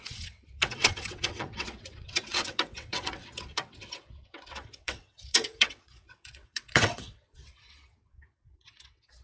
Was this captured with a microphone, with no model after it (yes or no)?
no